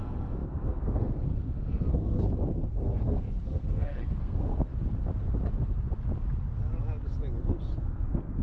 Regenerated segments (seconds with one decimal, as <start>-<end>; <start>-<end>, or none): 0.0-4.7; 7.8-8.4